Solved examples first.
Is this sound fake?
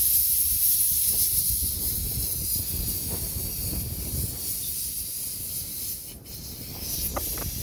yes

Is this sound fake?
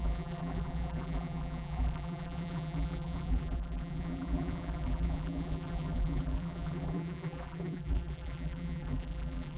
yes